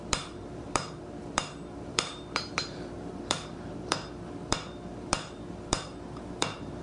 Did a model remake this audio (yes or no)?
yes